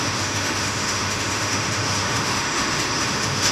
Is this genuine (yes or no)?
no